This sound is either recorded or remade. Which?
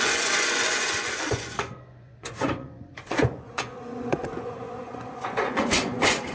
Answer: remade